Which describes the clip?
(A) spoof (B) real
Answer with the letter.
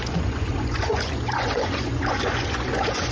A